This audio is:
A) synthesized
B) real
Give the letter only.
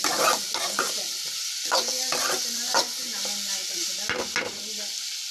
B